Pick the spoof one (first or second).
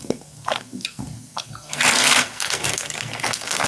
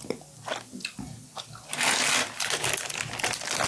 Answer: first